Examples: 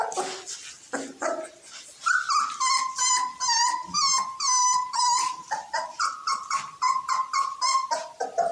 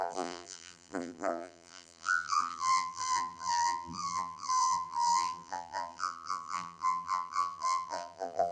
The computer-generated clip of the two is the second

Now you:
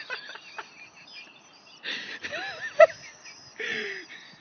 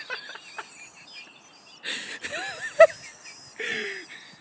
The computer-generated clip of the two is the first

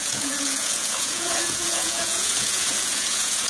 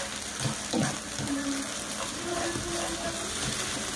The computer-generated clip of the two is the first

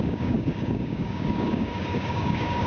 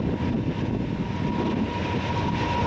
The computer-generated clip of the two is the first